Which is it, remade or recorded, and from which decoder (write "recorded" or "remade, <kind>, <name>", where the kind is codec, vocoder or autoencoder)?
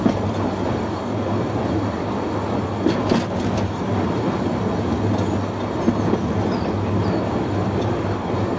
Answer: recorded